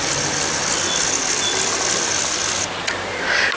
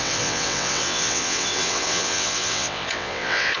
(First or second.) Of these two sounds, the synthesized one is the second